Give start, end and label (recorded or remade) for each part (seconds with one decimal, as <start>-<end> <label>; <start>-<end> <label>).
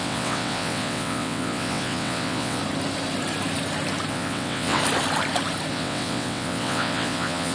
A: 0.0-2.6 remade; 2.6-4.1 recorded; 4.1-4.8 remade; 4.8-5.7 recorded; 5.7-7.5 remade